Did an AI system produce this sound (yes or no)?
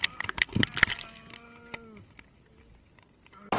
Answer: no